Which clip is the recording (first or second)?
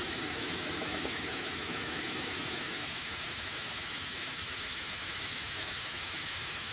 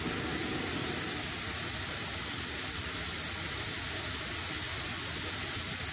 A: second